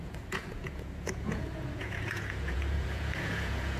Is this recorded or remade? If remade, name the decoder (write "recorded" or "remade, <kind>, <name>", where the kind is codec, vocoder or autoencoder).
remade, vocoder, Vocos